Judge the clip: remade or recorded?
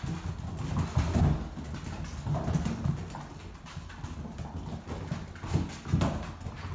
recorded